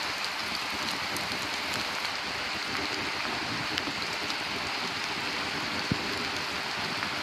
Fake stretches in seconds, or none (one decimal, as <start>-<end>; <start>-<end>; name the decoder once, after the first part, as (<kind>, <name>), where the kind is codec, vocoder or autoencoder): none